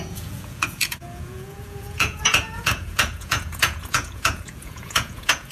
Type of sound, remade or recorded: remade